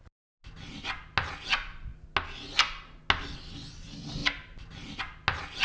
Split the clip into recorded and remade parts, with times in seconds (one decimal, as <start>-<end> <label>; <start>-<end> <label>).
0.0-5.6 recorded